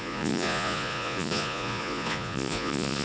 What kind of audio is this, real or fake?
fake